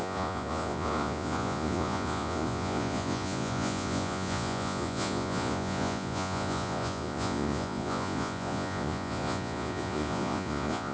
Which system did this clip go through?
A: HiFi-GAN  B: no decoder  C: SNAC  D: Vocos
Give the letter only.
D